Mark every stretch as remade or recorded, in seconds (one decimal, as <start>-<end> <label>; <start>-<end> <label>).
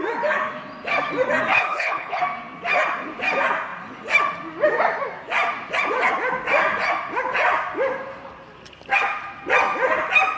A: 0.0-1.5 recorded; 1.5-2.2 remade; 2.2-10.4 recorded